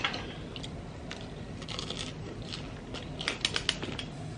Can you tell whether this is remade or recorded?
recorded